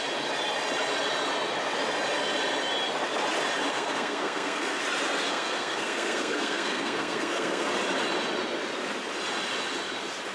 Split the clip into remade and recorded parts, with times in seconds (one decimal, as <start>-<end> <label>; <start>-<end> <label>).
0.0-3.7 recorded; 3.7-4.8 remade; 4.8-5.3 recorded; 5.3-7.7 remade; 7.7-10.3 recorded